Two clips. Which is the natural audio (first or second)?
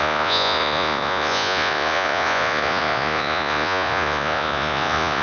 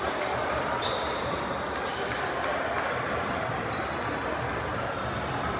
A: second